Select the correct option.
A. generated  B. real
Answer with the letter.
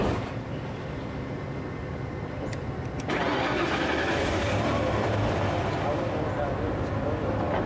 B